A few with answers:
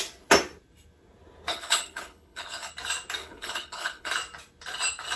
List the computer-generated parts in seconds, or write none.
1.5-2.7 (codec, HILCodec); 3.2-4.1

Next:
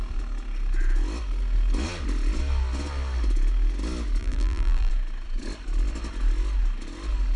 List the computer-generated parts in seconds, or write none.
4.2-4.9 (vocoder, BigVGAN v2)

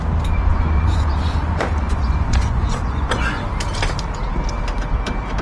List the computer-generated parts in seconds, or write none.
0.5-3.4 (vocoder, Vocos)

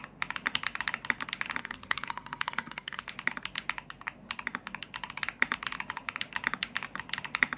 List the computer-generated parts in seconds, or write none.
1.6-3.1 (codec, SNAC)

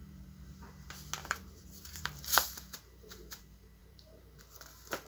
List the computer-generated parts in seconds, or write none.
0.0-0.7 (vocoder, BigVGAN v2); 1.2-3.4; 3.8-4.4

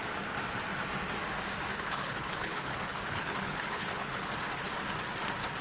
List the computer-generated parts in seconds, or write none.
1.7-4.3 (codec, HILCodec)

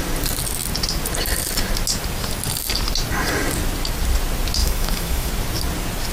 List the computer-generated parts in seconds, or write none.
4.6-5.3 (autoencoder, DAC-VAE)

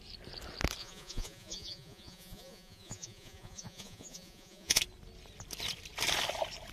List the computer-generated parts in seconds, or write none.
0.8-4.8 (vocoder, Vocos)